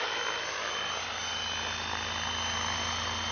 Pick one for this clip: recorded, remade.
recorded